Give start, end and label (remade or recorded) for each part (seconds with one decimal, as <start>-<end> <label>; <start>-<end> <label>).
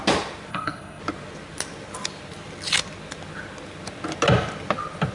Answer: 0.0-0.5 recorded; 0.5-1.0 remade; 1.0-5.1 recorded